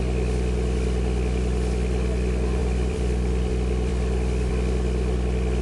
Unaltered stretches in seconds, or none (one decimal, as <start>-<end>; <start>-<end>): 0.0-2.6; 3.5-3.9; 4.5-5.6